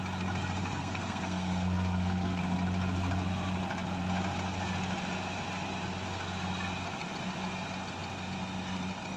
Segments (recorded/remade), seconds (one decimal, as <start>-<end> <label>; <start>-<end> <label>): 0.0-0.6 recorded; 0.6-2.4 remade; 2.4-9.2 recorded